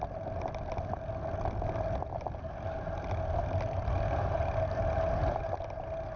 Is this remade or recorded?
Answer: recorded